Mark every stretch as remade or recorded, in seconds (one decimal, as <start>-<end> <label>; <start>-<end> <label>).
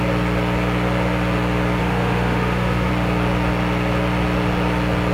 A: 0.0-1.8 recorded; 1.8-2.9 remade; 2.9-5.1 recorded